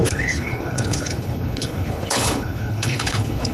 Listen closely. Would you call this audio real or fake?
fake